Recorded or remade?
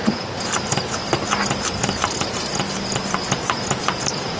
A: recorded